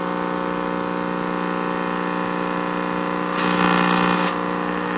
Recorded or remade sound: recorded